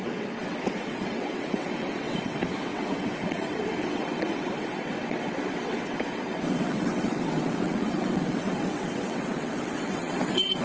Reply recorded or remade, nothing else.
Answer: remade